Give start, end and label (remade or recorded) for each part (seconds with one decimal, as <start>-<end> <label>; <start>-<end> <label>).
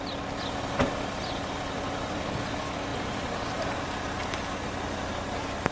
0.0-5.7 recorded